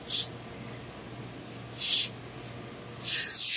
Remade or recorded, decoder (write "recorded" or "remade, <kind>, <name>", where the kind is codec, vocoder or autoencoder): recorded